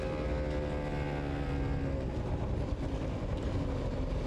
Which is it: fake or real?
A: real